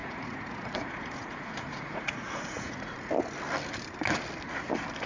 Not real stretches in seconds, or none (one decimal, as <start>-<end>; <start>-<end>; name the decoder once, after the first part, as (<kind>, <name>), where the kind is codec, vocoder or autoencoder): 0.0-3.1 (vocoder, Vocos)